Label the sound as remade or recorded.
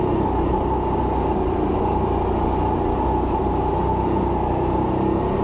recorded